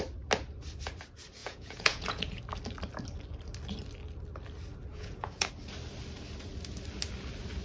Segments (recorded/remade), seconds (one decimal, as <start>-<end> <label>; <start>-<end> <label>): 0.0-1.4 recorded; 1.4-2.4 remade; 2.4-4.9 recorded; 4.9-5.5 remade; 5.5-7.6 recorded